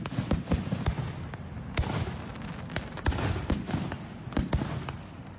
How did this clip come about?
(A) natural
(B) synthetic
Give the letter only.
A